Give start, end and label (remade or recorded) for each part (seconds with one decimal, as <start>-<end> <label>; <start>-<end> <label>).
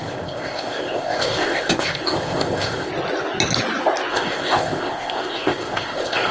0.0-2.9 remade; 2.9-4.1 recorded; 4.1-6.3 remade